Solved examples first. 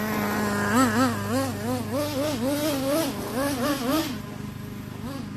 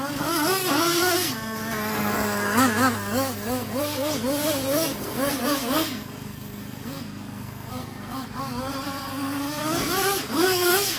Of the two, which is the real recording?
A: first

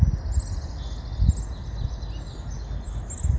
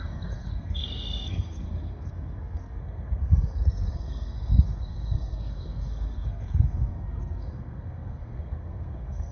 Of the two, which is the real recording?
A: first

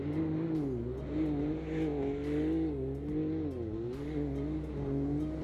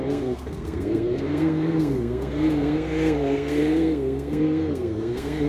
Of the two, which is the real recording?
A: first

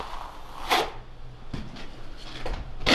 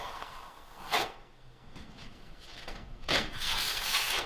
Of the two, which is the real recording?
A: first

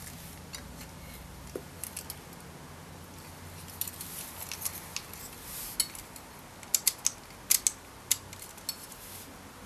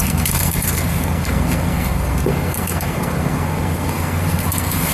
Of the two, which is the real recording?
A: first